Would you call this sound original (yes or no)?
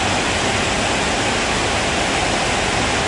yes